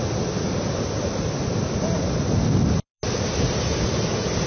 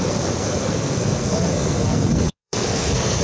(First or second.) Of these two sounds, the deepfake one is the second